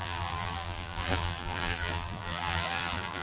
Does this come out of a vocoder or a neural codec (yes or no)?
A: yes